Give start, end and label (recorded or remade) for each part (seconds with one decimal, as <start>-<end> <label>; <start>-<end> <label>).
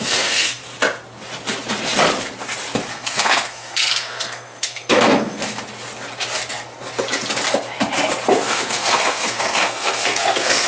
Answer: 0.0-0.6 remade; 0.6-2.9 recorded; 2.9-5.4 remade; 5.4-8.3 recorded; 8.3-10.7 remade